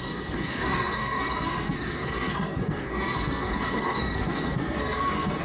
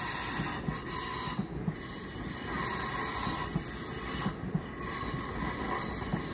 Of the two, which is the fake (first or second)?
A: first